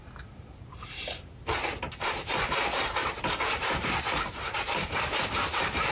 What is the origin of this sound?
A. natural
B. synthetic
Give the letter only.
B